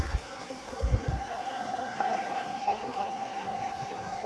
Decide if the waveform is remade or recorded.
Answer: remade